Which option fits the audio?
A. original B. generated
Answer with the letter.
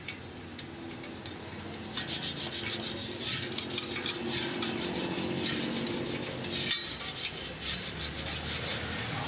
A